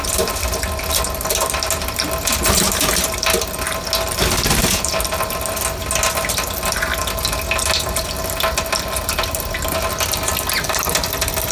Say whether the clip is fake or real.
real